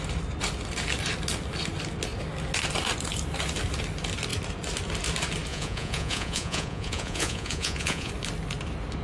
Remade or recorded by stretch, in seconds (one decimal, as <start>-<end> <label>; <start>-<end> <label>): 0.0-5.5 recorded; 5.5-8.1 remade; 8.1-9.0 recorded